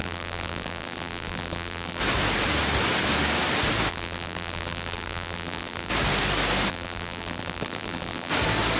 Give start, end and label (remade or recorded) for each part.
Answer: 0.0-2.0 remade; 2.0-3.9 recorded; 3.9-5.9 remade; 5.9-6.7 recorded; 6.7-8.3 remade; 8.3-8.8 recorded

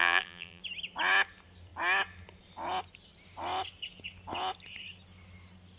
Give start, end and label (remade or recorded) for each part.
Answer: 0.0-0.6 remade; 0.6-5.8 recorded

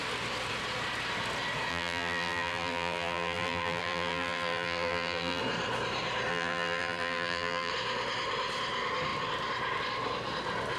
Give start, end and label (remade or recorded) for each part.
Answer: 0.0-1.7 recorded; 1.7-5.4 remade; 5.4-6.3 recorded; 6.3-7.7 remade; 7.7-10.8 recorded